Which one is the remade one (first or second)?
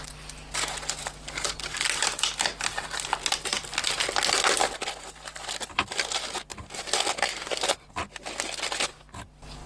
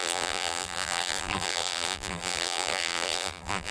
second